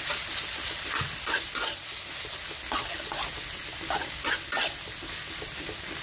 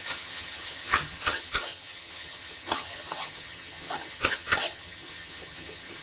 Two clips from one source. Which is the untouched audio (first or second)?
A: first